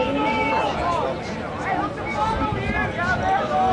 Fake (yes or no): no